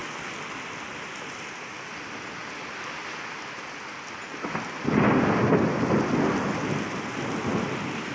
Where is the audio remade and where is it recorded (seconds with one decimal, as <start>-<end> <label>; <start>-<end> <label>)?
0.0-8.1 recorded